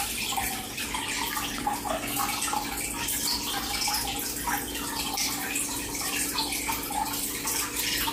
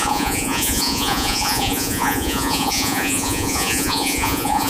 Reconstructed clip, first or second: second